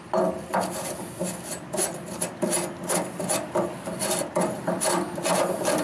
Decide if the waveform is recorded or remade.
recorded